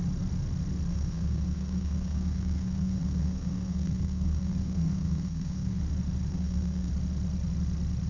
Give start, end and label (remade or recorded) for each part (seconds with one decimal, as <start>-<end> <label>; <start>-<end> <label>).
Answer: 0.0-0.9 recorded; 0.9-5.8 remade; 5.8-6.3 recorded; 6.3-6.9 remade; 6.9-8.1 recorded